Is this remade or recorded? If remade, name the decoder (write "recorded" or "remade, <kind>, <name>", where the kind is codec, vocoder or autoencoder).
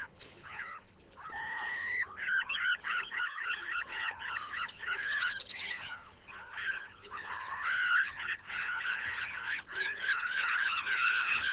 remade, codec, HILCodec